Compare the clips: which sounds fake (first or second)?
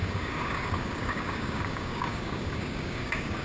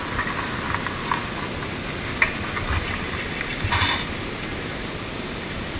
first